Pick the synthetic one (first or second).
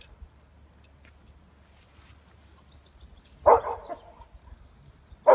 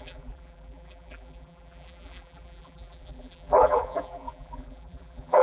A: second